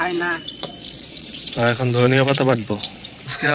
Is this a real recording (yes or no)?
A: no